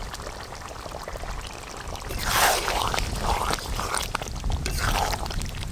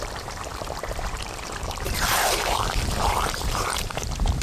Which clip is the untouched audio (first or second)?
first